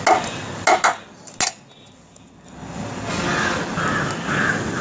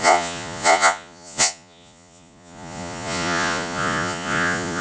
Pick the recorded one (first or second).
first